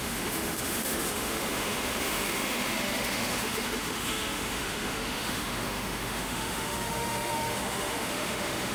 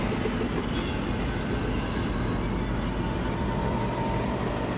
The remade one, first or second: first